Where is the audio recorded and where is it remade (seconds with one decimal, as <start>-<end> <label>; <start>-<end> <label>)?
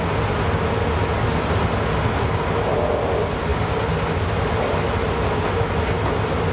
0.0-6.5 recorded